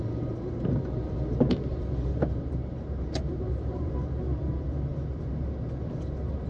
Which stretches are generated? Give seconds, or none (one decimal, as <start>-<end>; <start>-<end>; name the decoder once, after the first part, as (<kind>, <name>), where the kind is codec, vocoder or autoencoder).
1.7-2.5 (vocoder, BigVGAN v2); 3.2-3.8